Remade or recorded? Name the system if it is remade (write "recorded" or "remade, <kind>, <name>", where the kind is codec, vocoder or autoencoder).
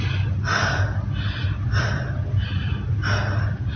remade, vocoder, BigVGAN v2